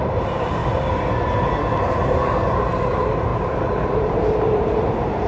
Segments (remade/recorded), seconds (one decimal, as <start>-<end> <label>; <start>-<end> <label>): 0.0-0.6 remade; 0.6-1.9 recorded; 1.9-5.3 remade